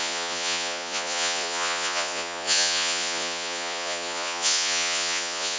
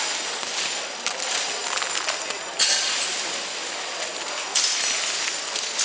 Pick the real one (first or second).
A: second